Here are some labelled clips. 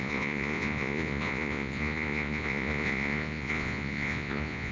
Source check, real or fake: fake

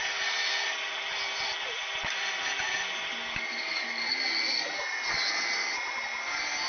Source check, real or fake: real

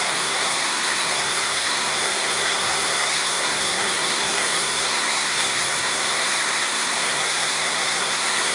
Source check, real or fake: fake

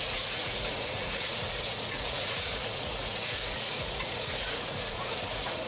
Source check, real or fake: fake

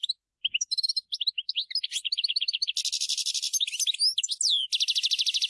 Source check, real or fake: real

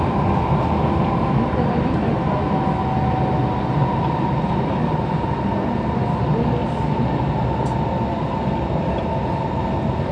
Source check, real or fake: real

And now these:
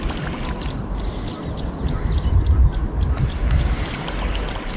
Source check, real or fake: real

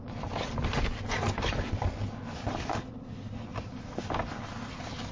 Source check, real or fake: real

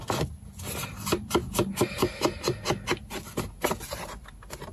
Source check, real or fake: real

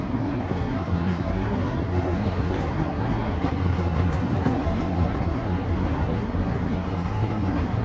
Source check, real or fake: fake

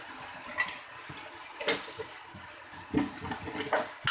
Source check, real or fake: real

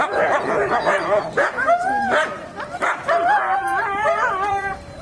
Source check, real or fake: fake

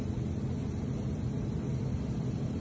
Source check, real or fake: real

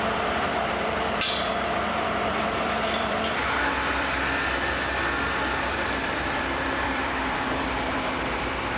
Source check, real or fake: fake